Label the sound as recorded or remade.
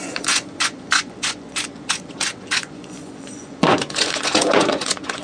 remade